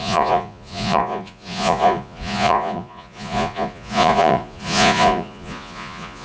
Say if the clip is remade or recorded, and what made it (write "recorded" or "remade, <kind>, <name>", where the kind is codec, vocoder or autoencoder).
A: remade, vocoder, Vocos